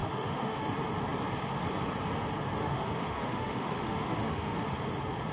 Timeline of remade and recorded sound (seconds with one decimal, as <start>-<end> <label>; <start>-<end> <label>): 0.0-0.7 remade; 0.7-2.6 recorded; 2.6-4.7 remade; 4.7-5.3 recorded